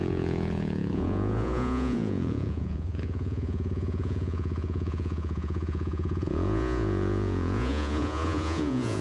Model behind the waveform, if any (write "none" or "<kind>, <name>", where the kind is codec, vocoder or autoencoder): vocoder, Vocos